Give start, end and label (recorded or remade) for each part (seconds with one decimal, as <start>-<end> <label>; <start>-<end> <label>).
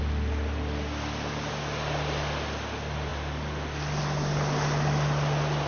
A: 0.0-5.7 recorded